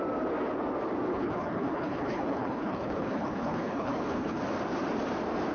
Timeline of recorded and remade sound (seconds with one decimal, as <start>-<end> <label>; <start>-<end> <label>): 0.0-1.1 recorded; 1.1-4.4 remade; 4.4-5.5 recorded